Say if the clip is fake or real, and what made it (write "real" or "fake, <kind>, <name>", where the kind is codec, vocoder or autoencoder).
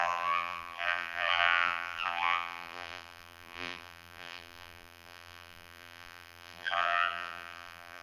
fake, vocoder, BigVGAN v2